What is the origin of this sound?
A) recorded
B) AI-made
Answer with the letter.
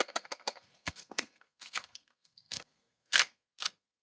B